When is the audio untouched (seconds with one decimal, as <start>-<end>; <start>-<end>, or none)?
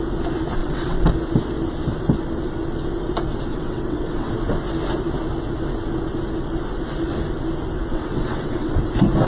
0.0-0.6; 1.1-3.5; 4.3-7.9; 8.8-9.3